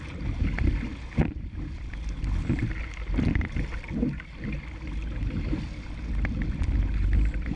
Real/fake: real